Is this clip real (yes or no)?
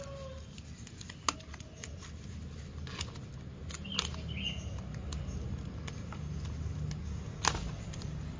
yes